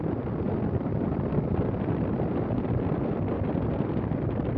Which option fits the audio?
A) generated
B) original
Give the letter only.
A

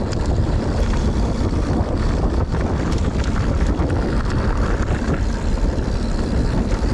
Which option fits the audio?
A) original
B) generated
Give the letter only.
B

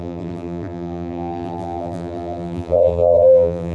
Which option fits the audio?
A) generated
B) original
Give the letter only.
A